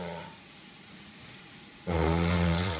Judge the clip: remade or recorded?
remade